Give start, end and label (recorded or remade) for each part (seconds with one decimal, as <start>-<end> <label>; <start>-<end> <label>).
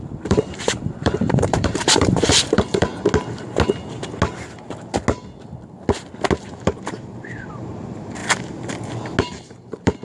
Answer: 0.0-2.9 remade; 2.9-6.4 recorded; 6.4-8.2 remade; 8.2-9.2 recorded; 9.2-10.0 remade